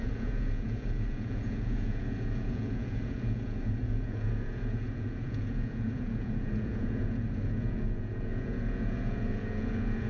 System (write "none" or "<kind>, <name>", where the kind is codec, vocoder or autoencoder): vocoder, Vocos